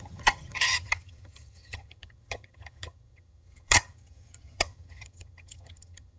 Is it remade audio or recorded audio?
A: remade